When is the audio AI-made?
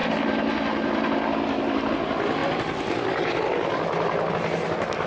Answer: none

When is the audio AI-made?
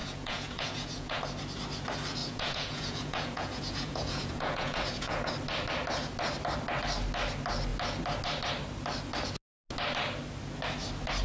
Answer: 0.0-1.2; 2.2-5.3